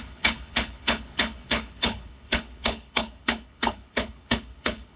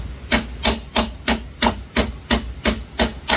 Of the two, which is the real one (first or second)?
second